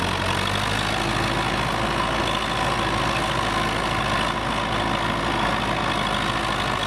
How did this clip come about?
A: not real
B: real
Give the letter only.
B